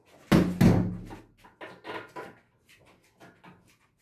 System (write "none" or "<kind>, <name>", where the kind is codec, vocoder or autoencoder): none